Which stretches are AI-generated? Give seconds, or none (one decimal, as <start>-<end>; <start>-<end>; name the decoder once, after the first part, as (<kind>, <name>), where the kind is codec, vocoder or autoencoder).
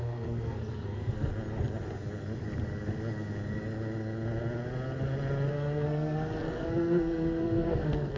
0.0-1.3 (codec, SNAC); 5.5-8.2